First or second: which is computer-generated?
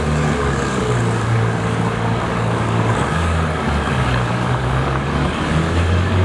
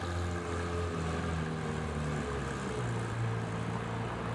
first